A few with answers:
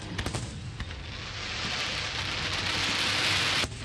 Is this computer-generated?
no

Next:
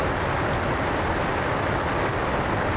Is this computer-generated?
no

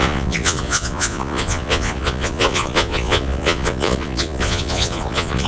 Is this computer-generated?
yes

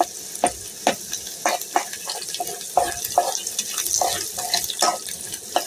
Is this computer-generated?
no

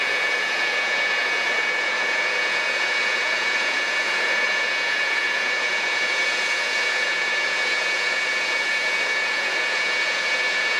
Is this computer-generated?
yes